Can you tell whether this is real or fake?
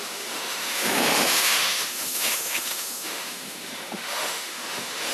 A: fake